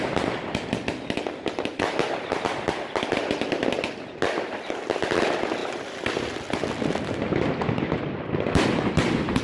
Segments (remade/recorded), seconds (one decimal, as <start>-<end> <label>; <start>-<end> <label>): 0.0-5.6 recorded; 5.6-8.2 remade; 8.2-9.4 recorded